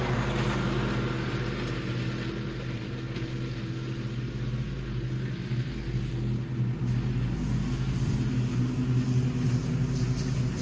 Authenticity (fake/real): real